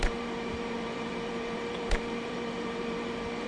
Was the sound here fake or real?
fake